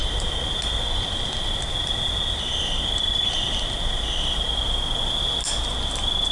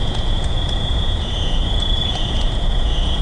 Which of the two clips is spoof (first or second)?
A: second